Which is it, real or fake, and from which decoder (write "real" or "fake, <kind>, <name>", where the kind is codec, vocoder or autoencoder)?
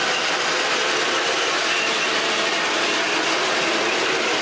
real